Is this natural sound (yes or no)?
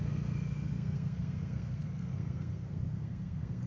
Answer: no